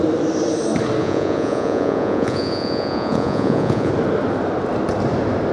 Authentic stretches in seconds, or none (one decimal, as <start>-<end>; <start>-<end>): 0.0-1.0; 3.9-5.5